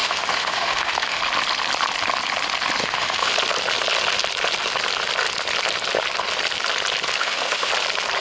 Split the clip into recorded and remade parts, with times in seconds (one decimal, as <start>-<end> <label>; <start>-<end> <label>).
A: 0.0-1.2 remade; 1.2-2.8 recorded; 2.8-3.3 remade; 3.3-7.2 recorded; 7.2-7.7 remade; 7.7-8.2 recorded